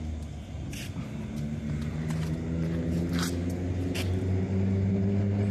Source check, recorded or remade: recorded